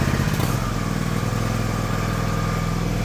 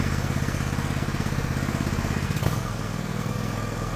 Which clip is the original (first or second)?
first